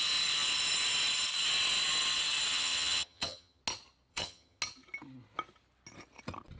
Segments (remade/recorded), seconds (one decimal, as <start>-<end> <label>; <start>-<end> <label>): 0.0-2.5 recorded; 2.5-3.6 remade; 3.6-4.1 recorded; 4.1-4.6 remade; 4.6-6.6 recorded